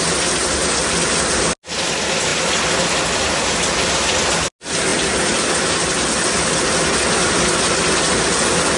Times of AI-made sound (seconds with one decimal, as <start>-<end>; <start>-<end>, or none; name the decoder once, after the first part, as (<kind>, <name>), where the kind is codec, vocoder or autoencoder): none